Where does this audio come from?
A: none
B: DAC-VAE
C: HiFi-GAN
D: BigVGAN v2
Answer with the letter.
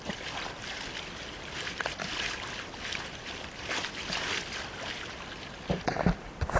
D